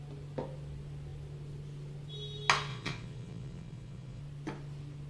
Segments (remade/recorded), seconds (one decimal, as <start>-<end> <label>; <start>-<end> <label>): 0.0-2.7 recorded; 2.7-4.2 remade; 4.2-5.1 recorded